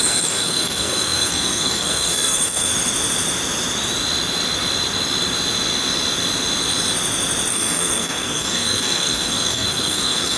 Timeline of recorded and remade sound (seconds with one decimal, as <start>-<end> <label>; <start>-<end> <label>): 0.0-2.7 remade; 2.7-7.5 recorded; 7.5-10.4 remade